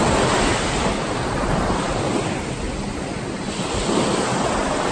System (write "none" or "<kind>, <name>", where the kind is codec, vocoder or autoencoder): none